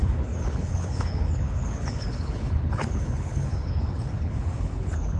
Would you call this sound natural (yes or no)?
no